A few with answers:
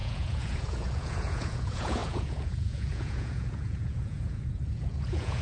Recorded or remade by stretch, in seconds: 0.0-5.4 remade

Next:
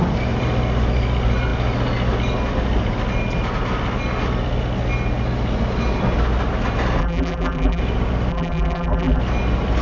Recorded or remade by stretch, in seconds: 0.0-7.0 recorded; 7.0-7.8 remade; 7.8-8.3 recorded; 8.3-9.2 remade; 9.2-9.8 recorded

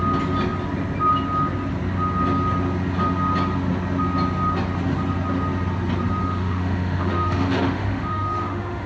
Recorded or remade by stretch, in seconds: 0.0-6.2 recorded; 6.2-8.9 remade

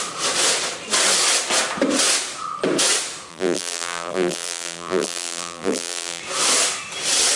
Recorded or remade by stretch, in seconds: 0.0-3.3 recorded; 3.3-6.2 remade; 6.2-7.4 recorded

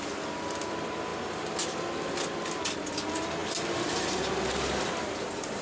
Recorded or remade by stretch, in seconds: 0.0-5.6 recorded

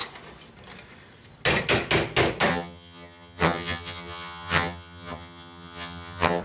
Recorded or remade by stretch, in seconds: 0.0-2.5 recorded; 2.5-6.4 remade

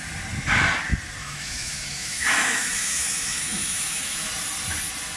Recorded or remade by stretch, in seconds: 0.0-1.2 recorded; 1.2-4.3 remade; 4.3-5.2 recorded

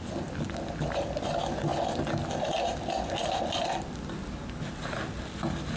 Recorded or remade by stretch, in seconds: 0.0-5.8 recorded